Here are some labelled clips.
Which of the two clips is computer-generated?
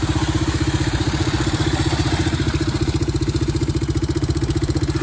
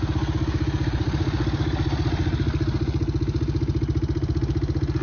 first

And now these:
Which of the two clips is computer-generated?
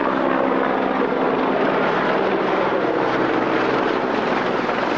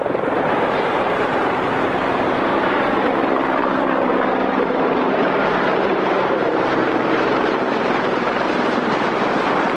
second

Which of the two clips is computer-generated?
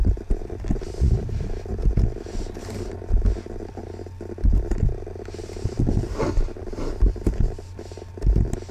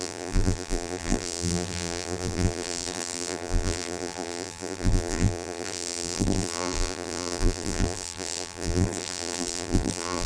second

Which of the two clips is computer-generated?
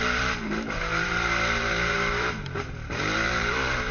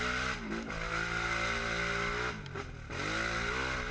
first